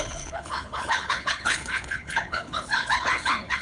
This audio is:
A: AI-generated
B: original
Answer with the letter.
A